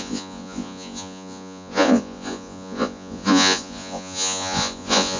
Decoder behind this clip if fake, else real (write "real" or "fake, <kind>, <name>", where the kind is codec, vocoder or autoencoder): fake, vocoder, Vocos